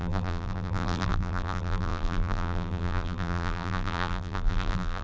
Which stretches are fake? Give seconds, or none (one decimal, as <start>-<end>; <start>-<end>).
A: 0.0-5.0